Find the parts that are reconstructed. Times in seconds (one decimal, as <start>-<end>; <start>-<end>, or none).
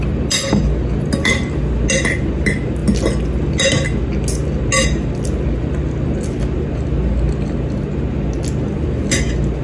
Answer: none